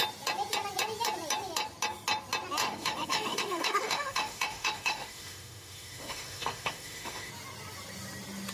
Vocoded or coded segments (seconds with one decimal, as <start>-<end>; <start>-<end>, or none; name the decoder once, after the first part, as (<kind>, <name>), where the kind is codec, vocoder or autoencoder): 2.6-7.3 (autoencoder, DAC-VAE)